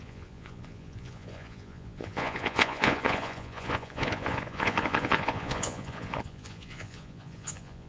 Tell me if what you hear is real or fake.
fake